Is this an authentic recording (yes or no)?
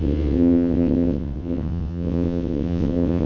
no